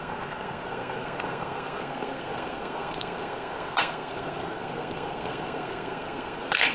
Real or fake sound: fake